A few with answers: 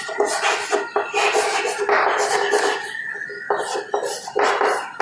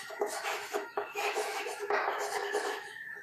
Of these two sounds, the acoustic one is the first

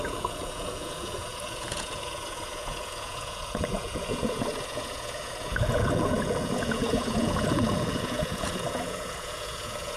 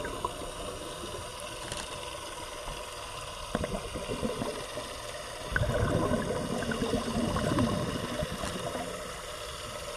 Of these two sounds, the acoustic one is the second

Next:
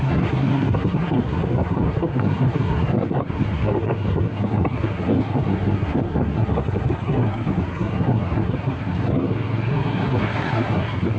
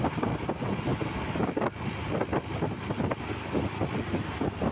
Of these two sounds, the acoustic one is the second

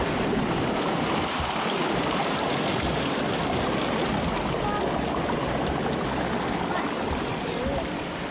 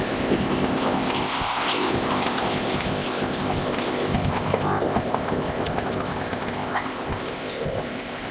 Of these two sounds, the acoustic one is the first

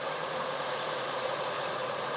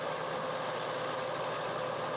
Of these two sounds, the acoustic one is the second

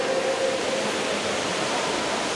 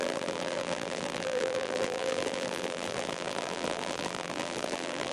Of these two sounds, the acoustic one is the first